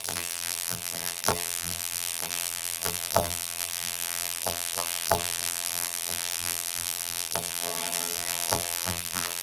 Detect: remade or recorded remade